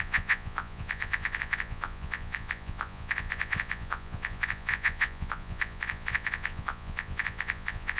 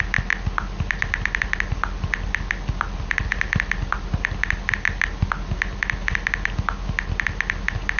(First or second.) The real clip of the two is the second